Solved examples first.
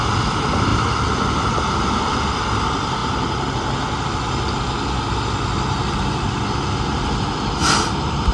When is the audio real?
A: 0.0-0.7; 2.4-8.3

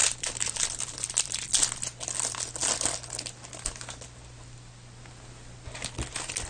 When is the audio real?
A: 1.5-6.5

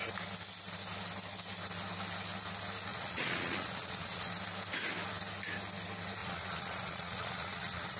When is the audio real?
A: 0.0-2.9; 4.3-6.2

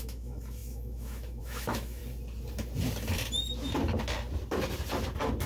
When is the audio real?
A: 2.0-5.5